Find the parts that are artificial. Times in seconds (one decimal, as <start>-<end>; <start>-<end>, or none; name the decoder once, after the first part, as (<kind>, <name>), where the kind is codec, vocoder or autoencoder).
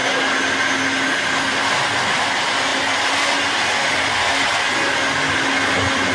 none